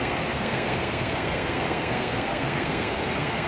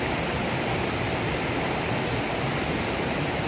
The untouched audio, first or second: second